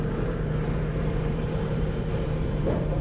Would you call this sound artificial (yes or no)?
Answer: yes